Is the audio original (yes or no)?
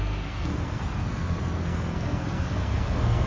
no